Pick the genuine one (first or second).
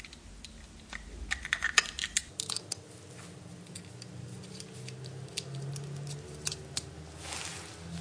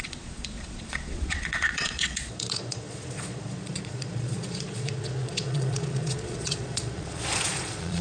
first